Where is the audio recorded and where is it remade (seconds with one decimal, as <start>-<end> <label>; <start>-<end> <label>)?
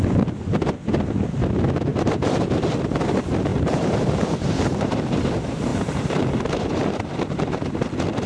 0.0-1.9 recorded; 1.9-2.5 remade; 2.5-3.5 recorded; 3.5-5.0 remade; 5.0-5.7 recorded; 5.7-7.8 remade; 7.8-8.3 recorded